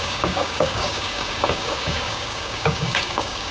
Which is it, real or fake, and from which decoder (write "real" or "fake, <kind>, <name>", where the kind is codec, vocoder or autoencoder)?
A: fake, codec, DAC